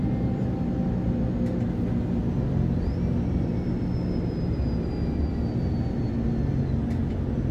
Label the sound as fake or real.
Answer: real